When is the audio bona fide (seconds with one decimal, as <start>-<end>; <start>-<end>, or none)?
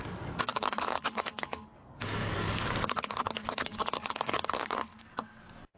none